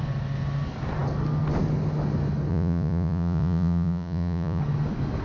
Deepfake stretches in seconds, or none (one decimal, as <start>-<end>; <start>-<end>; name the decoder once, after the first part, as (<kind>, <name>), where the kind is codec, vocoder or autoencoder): 2.5-4.6 (vocoder, Vocos)